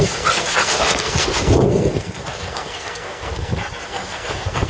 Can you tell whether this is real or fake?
fake